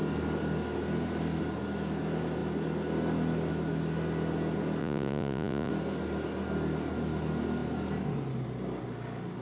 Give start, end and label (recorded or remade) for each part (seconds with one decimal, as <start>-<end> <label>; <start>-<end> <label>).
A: 0.0-4.8 recorded; 4.8-5.7 remade; 5.7-9.4 recorded